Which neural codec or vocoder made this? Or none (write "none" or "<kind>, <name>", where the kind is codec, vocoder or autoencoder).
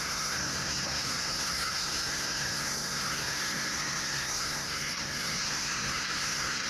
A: codec, SNAC